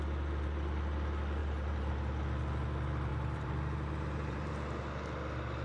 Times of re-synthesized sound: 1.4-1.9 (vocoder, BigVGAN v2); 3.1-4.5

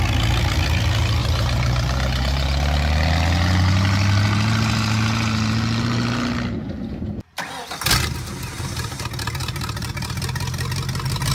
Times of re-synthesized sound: 1.2-1.9 (vocoder, BigVGAN v2); 9.4-9.9

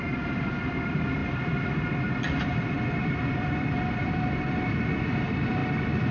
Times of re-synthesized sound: 0.0-6.1 (vocoder, BigVGAN v2)

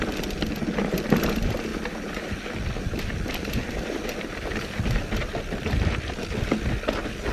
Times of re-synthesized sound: 1.7-6.1 (vocoder, BigVGAN v2)